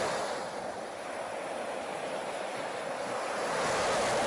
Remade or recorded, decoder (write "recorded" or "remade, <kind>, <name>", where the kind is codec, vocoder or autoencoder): recorded